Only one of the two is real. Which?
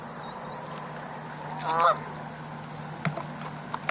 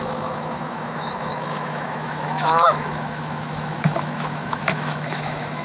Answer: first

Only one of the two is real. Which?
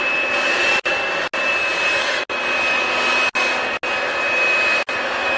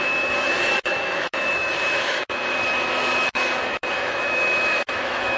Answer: first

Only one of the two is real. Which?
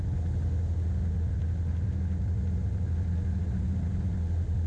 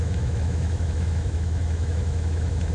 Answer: first